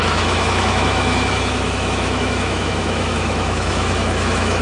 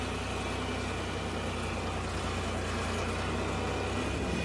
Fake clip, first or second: first